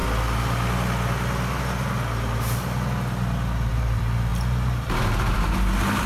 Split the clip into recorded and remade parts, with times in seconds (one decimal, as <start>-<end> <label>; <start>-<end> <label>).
0.0-3.7 recorded; 3.7-6.1 remade